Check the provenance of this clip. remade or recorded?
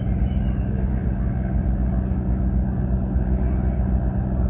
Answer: recorded